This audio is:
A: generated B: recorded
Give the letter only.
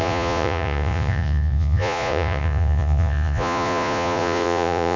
A